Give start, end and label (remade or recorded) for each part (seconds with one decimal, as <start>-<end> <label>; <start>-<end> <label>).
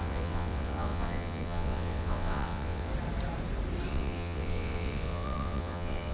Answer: 0.0-2.9 remade; 2.9-3.9 recorded; 3.9-6.1 remade